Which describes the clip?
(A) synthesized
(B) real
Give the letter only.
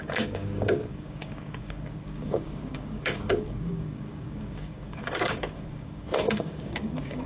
A